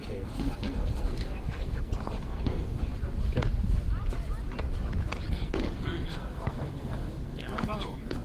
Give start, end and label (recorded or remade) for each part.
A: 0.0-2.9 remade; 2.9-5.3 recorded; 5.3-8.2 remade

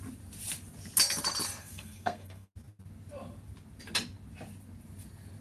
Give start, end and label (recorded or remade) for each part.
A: 0.0-1.6 recorded; 1.6-2.5 remade; 2.5-5.4 recorded